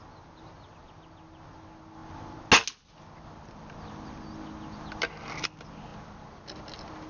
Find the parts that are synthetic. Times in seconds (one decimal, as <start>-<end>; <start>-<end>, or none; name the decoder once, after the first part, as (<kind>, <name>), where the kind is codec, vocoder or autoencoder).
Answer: none